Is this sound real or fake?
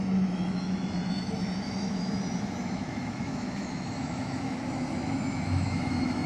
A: fake